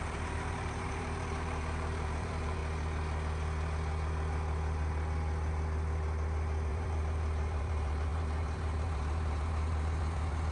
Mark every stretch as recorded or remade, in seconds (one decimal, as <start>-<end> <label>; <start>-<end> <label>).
0.0-2.6 remade; 2.6-6.7 recorded; 6.7-10.5 remade